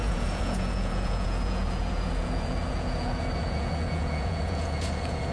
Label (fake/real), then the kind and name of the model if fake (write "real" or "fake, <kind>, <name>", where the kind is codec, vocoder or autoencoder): fake, vocoder, Vocos